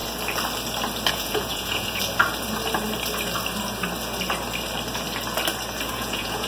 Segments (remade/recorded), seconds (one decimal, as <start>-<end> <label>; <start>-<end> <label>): 0.0-1.1 recorded; 1.1-2.0 remade; 2.0-5.9 recorded; 5.9-6.5 remade